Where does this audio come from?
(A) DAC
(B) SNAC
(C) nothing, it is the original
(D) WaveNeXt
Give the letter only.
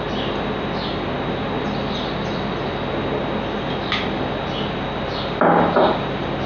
C